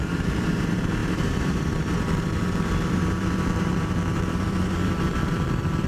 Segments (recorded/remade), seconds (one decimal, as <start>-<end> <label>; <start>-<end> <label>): 0.0-5.9 remade